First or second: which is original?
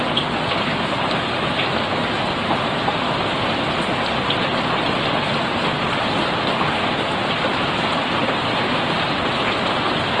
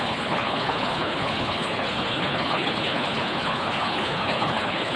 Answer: first